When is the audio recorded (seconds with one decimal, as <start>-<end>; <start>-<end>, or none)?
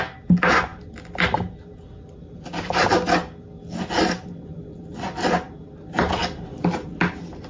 0.0-7.5